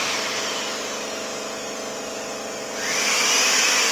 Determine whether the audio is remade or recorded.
recorded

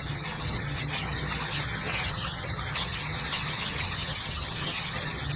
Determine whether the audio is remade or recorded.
remade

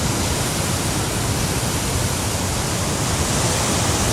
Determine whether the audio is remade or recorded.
recorded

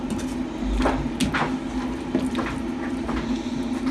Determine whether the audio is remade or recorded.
recorded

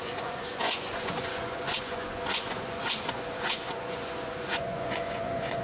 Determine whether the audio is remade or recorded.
remade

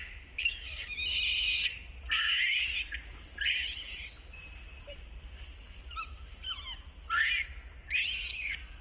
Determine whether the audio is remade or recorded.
recorded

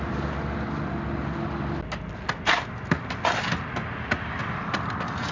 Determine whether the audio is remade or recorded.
recorded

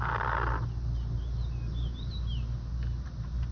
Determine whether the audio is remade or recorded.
recorded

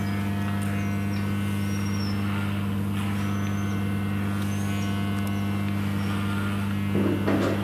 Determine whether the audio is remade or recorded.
recorded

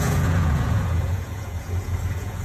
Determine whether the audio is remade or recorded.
remade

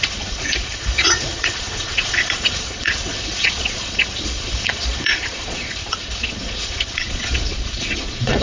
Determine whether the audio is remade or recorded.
remade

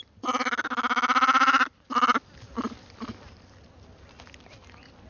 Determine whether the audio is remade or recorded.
recorded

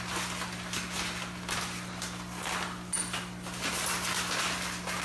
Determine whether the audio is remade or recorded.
recorded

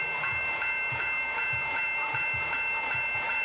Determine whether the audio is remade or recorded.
remade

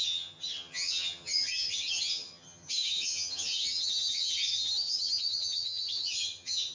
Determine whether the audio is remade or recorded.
remade